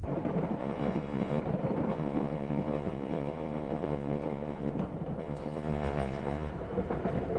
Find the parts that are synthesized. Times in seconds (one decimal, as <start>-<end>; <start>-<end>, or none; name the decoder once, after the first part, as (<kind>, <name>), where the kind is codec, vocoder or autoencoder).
0.6-1.4 (vocoder, Vocos); 1.9-4.7; 5.2-6.5